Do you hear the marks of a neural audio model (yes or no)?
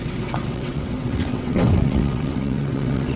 yes